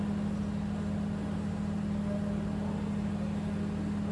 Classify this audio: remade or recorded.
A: recorded